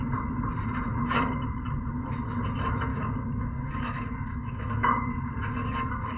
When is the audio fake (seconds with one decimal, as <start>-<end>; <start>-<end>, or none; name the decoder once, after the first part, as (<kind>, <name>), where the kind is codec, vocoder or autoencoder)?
2.9-6.2 (codec, DAC)